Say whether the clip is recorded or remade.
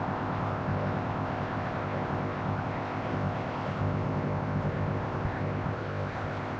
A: remade